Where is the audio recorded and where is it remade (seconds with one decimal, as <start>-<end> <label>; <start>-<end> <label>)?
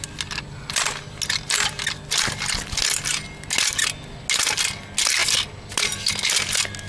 0.0-6.9 recorded